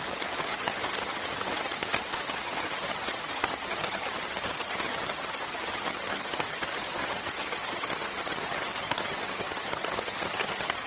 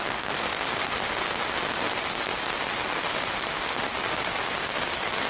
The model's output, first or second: first